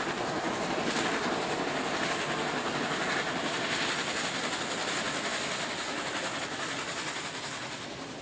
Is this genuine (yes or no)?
yes